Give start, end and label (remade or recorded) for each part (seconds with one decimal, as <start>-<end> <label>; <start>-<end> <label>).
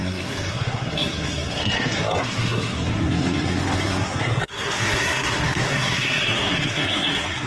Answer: 0.0-7.5 remade